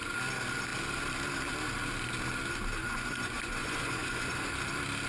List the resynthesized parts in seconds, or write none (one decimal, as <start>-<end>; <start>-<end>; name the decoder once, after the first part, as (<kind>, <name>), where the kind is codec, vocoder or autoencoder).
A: 2.8-4.5 (vocoder, Vocos)